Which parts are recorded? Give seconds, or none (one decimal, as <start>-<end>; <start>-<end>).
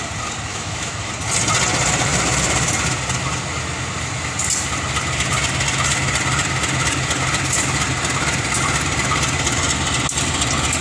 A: 0.0-0.5; 1.1-10.8